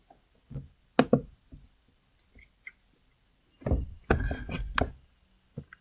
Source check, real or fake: real